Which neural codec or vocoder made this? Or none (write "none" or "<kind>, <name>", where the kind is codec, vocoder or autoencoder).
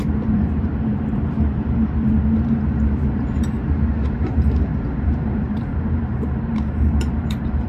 vocoder, BigVGAN v2